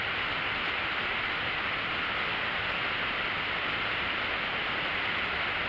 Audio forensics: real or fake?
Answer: real